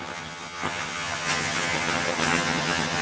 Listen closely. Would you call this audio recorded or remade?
remade